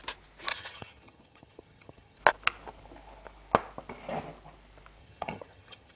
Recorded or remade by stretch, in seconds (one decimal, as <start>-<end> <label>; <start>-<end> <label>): 0.0-0.5 recorded; 0.5-2.2 remade; 2.2-5.0 recorded; 5.0-6.0 remade